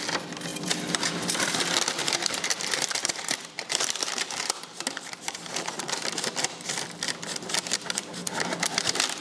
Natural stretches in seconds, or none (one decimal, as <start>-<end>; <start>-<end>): 0.0-0.5; 1.4-2.0; 5.9-9.2